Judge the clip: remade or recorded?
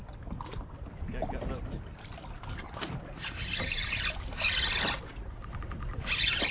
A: recorded